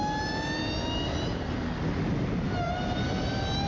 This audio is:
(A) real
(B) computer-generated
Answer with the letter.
A